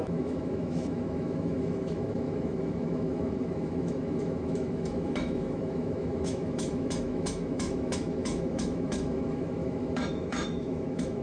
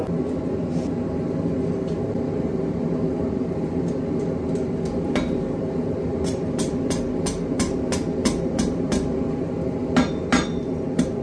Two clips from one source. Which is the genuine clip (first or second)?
second